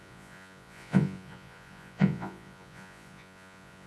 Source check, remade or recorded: remade